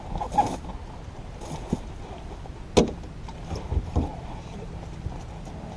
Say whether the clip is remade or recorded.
recorded